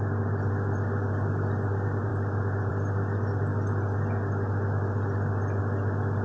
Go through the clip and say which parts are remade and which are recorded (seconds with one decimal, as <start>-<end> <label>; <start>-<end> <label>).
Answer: 0.0-3.5 remade; 3.5-5.6 recorded; 5.6-6.2 remade